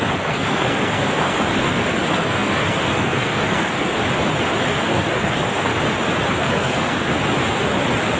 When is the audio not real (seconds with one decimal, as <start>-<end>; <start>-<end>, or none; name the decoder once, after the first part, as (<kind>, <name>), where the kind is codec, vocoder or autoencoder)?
0.0-4.0 (codec, SNAC); 4.7-5.7; 6.3-7.1